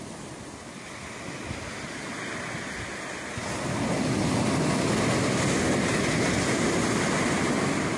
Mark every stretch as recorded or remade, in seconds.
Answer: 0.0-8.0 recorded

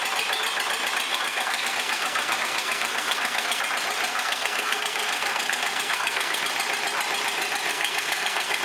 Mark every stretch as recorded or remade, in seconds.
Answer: 0.0-1.1 recorded; 1.1-3.6 remade; 3.6-4.1 recorded; 4.1-6.4 remade; 6.4-7.7 recorded; 7.7-8.6 remade

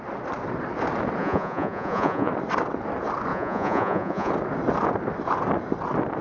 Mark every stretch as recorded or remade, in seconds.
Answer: 0.0-1.2 recorded; 1.2-2.3 remade; 2.3-3.3 recorded; 3.3-4.3 remade; 4.3-6.2 recorded

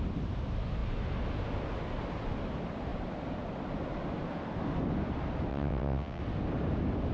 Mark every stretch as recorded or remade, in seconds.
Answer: 0.0-5.5 recorded; 5.5-6.2 remade; 6.2-7.1 recorded

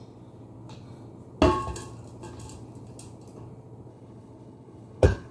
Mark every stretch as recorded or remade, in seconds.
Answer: 0.0-3.9 recorded; 3.9-5.3 remade